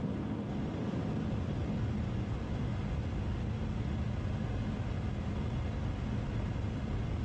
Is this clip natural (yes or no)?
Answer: yes